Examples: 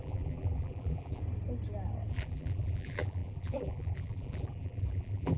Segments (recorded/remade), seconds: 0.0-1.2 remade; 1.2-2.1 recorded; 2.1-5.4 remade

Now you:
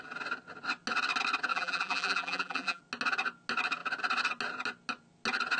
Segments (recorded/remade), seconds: 0.0-1.5 recorded; 1.5-2.8 remade; 2.8-5.6 recorded

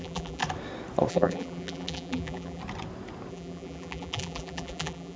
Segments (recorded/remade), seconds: 0.0-0.4 remade; 0.4-1.1 recorded; 1.1-2.6 remade; 2.6-3.3 recorded; 3.3-5.2 remade